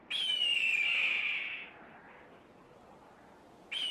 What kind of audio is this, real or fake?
real